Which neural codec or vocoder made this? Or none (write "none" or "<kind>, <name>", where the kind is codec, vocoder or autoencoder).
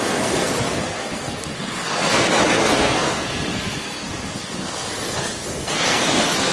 codec, SNAC